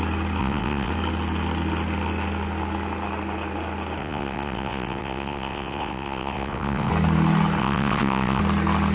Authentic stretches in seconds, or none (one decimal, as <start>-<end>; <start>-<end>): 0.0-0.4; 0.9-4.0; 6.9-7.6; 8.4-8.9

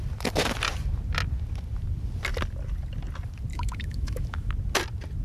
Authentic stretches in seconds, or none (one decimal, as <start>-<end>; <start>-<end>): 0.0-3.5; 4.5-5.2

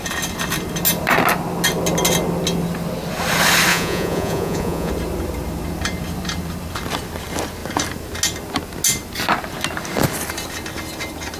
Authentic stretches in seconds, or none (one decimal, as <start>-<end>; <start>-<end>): 0.0-3.7; 4.9-11.4

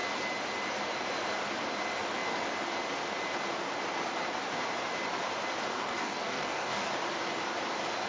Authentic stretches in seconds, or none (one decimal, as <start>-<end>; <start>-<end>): 0.0-5.7; 6.9-8.1